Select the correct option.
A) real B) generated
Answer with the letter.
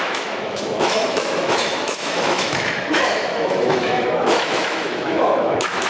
B